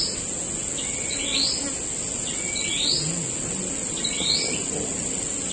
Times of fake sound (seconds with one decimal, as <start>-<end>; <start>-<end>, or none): none